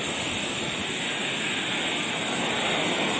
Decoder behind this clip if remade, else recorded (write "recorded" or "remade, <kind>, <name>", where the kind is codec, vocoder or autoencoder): recorded